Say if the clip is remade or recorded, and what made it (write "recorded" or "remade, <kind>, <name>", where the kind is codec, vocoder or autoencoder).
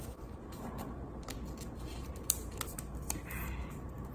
remade, vocoder, BigVGAN v2